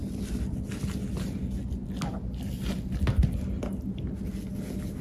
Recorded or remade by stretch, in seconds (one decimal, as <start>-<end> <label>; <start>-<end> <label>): 0.0-5.0 recorded